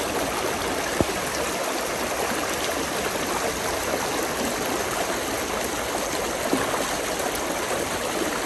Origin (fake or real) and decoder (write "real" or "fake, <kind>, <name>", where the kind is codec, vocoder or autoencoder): real